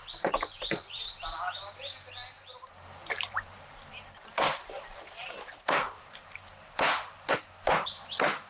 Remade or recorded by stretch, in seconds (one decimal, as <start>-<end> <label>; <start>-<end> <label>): 0.0-3.0 recorded; 3.0-7.3 remade; 7.3-8.5 recorded